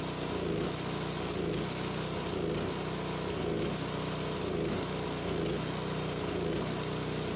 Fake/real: real